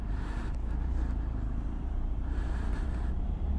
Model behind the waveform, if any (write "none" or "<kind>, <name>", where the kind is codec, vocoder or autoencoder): vocoder, BigVGAN v2